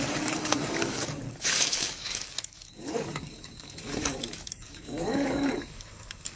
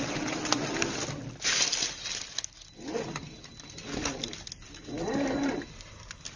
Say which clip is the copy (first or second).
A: first